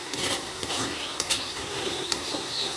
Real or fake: fake